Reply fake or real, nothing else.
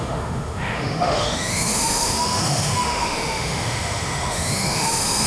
fake